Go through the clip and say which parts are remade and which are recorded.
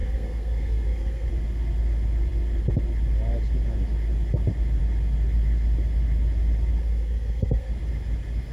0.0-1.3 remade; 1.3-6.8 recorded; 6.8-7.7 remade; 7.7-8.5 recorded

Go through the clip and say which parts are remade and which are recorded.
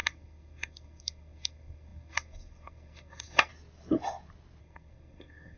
0.0-3.5 remade; 3.5-4.6 recorded; 4.6-5.6 remade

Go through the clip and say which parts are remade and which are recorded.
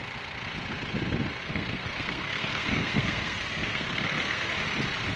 0.0-1.4 recorded; 1.4-4.5 remade; 4.5-5.2 recorded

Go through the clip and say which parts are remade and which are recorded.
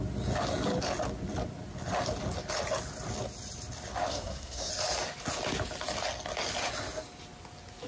0.0-4.1 recorded; 4.1-4.7 remade; 4.7-7.9 recorded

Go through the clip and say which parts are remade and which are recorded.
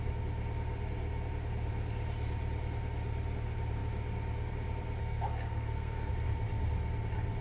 0.0-5.0 recorded; 5.0-6.1 remade; 6.1-7.4 recorded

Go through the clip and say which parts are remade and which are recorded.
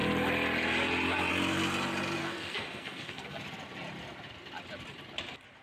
0.0-2.2 recorded; 2.2-3.4 remade; 3.4-5.6 recorded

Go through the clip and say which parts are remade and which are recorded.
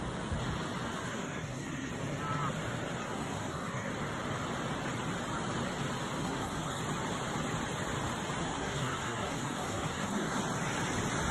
0.0-1.1 recorded; 1.1-1.9 remade; 1.9-3.0 recorded; 3.0-3.9 remade; 3.9-6.2 recorded; 6.2-6.8 remade; 6.8-8.4 recorded; 8.4-10.4 remade; 10.4-11.3 recorded